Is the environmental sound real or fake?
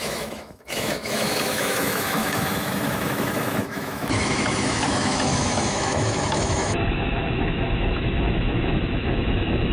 fake